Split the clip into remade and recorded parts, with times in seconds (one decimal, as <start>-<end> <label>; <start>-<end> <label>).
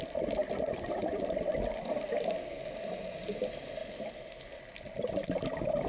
0.0-5.9 recorded